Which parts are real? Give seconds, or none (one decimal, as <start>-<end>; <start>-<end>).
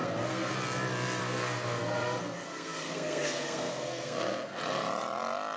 0.5-1.2; 4.6-5.6